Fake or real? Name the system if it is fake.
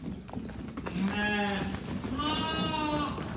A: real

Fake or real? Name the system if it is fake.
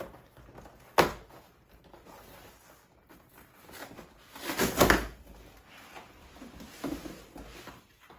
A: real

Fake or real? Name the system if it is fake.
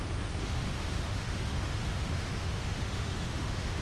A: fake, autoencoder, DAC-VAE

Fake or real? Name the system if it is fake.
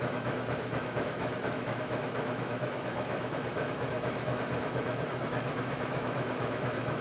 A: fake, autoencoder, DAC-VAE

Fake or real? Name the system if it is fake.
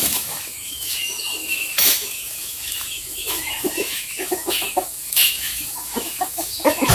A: fake, autoencoder, DAC-VAE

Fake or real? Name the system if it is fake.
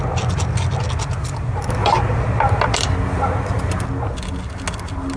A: real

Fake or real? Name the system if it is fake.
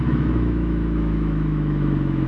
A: fake, autoencoder, DAC-VAE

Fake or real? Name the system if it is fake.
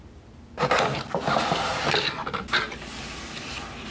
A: real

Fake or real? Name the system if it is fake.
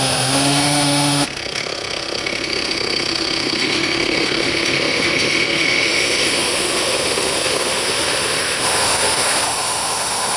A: fake, autoencoder, DAC-VAE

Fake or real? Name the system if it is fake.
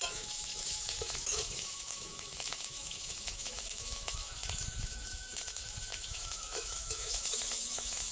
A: fake, autoencoder, DAC-VAE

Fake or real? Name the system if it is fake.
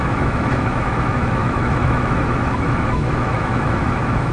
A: fake, autoencoder, DAC-VAE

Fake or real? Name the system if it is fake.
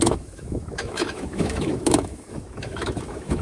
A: fake, autoencoder, DAC-VAE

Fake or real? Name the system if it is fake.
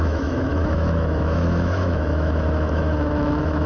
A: fake, autoencoder, DAC-VAE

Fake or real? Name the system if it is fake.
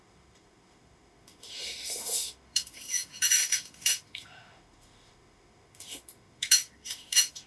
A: fake, autoencoder, DAC-VAE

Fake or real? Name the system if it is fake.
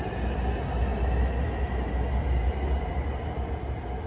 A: real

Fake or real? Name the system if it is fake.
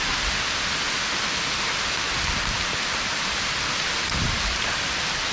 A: real